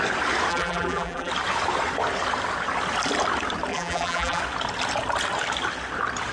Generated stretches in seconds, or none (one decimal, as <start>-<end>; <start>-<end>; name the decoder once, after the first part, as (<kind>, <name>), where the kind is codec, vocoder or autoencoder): 0.5-1.3 (vocoder, BigVGAN v2); 3.7-4.4